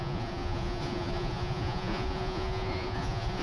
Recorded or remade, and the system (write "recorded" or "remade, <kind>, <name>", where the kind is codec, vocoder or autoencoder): remade, vocoder, Vocos